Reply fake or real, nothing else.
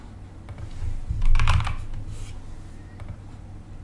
real